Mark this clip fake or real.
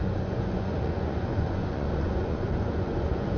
fake